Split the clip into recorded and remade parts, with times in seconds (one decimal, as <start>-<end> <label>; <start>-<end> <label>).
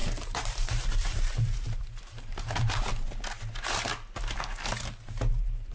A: 0.0-2.9 remade; 2.9-5.1 recorded; 5.1-5.7 remade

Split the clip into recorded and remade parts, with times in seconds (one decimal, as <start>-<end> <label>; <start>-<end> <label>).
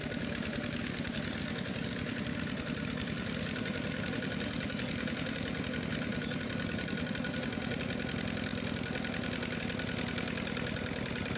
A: 0.0-11.4 recorded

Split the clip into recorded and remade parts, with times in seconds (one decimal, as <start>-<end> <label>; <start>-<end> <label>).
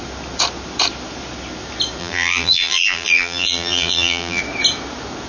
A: 0.0-2.0 recorded; 2.0-4.4 remade; 4.4-5.3 recorded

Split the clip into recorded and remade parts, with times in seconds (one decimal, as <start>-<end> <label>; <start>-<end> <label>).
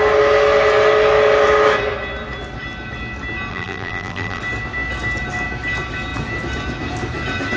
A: 0.0-3.5 recorded; 3.5-4.4 remade; 4.4-7.6 recorded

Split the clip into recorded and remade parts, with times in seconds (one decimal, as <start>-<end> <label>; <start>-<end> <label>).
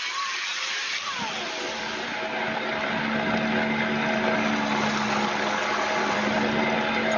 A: 0.0-0.5 recorded; 0.5-1.3 remade; 1.3-7.2 recorded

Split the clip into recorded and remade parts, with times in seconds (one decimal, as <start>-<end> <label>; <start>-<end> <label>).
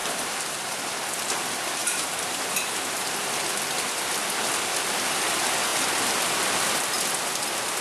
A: 0.0-0.8 remade; 0.8-1.8 recorded; 1.8-3.2 remade; 3.2-7.8 recorded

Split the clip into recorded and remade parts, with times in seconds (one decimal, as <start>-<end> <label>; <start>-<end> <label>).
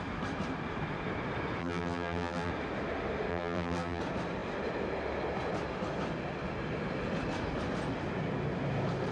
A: 0.0-1.6 recorded; 1.6-2.5 remade; 2.5-3.3 recorded; 3.3-4.0 remade; 4.0-9.1 recorded